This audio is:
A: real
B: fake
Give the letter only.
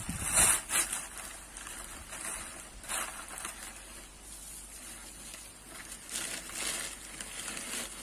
A